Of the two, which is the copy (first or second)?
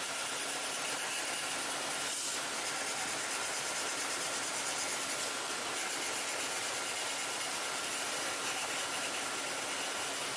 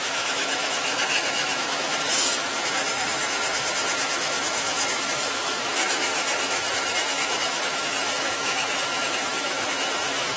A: second